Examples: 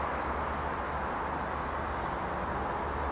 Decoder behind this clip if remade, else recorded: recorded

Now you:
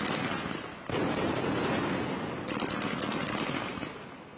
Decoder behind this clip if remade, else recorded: recorded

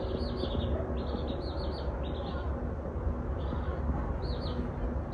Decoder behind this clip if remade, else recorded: recorded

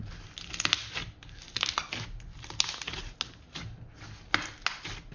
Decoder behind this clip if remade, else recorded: recorded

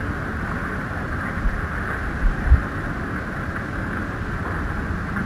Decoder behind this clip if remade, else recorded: recorded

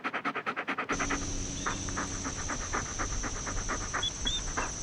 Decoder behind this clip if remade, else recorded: recorded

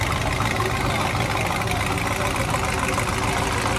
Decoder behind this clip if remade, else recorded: recorded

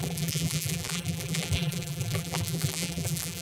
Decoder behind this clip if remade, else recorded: remade, vocoder, BigVGAN v2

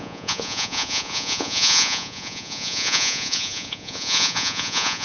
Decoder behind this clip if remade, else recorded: remade, vocoder, Vocos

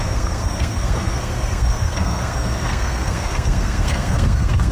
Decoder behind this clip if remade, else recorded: remade, codec, SNAC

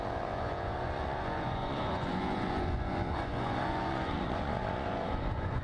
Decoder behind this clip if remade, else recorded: remade, vocoder, Vocos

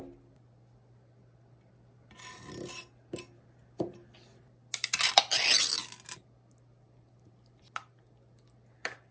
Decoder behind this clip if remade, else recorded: recorded